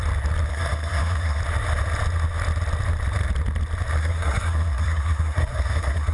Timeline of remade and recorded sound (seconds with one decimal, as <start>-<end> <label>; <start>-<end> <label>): 0.0-0.5 recorded; 0.5-1.4 remade; 1.4-4.0 recorded; 4.0-6.1 remade